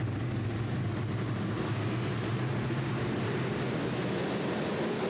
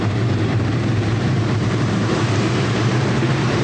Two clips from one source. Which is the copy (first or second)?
second